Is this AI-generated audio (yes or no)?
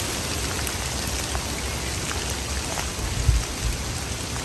no